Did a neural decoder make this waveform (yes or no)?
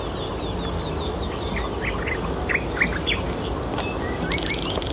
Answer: no